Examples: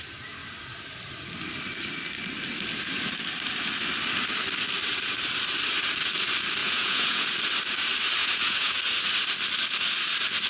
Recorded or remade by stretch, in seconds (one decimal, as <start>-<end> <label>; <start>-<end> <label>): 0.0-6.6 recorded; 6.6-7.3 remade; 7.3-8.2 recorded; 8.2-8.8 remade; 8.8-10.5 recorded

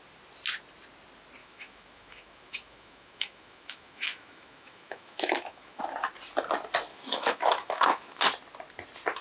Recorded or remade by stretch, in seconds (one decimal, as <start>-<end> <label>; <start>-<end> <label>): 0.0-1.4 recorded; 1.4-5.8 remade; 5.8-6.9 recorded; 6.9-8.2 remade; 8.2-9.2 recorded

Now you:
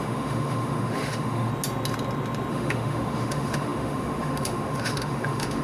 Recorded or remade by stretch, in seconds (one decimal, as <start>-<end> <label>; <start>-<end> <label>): 0.0-1.5 remade; 1.5-2.5 recorded; 2.5-5.6 remade

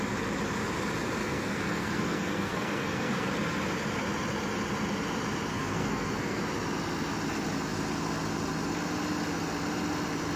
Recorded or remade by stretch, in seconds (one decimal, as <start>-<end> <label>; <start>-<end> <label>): 0.0-1.2 recorded; 1.2-3.3 remade; 3.3-5.5 recorded; 5.5-6.4 remade; 6.4-10.4 recorded

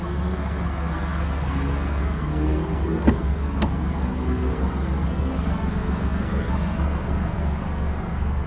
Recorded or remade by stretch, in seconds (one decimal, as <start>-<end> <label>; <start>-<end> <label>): 0.0-8.5 remade

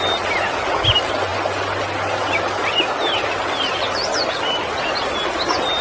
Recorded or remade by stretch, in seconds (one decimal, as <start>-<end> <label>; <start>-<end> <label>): 0.0-5.8 recorded